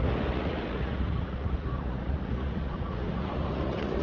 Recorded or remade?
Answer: remade